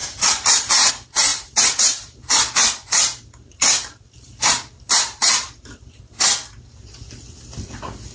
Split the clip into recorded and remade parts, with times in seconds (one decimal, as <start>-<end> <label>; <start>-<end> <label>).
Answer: 0.0-0.9 remade; 0.9-1.3 recorded; 1.3-6.2 remade; 6.2-8.1 recorded